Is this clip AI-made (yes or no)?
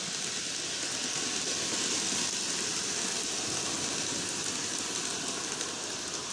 no